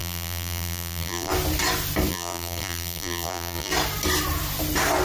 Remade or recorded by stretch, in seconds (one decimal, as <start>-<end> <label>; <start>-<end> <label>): 0.0-1.3 remade; 1.3-2.1 recorded; 2.1-3.7 remade; 3.7-5.0 recorded